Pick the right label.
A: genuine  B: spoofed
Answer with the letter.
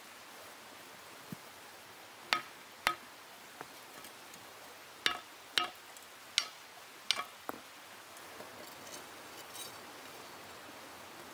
A